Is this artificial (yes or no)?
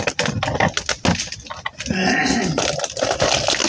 no